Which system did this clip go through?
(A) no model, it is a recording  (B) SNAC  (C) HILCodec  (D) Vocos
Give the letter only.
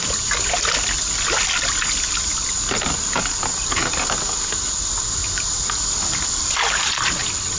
A